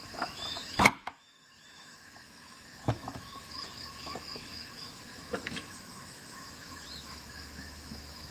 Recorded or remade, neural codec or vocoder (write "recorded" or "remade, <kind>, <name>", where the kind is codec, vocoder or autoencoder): remade, autoencoder, DAC-VAE